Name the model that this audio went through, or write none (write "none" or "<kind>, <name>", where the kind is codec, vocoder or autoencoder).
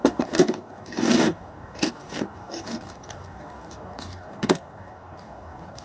codec, DAC